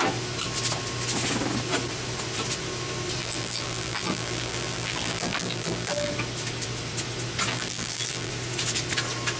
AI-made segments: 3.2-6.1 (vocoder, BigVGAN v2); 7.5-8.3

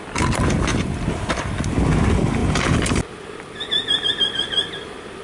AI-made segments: none

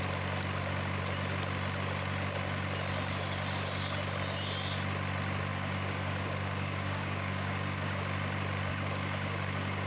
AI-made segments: 5.5-8.0 (codec, DAC); 8.7-9.9

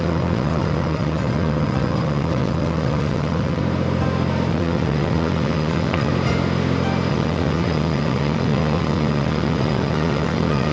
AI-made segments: 0.0-3.6 (vocoder, WaveNeXt); 4.5-6.1; 7.1-10.7

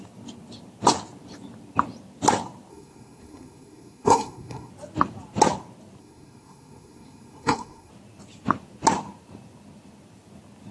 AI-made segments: 2.7-4.7 (codec, SNAC); 6.0-7.9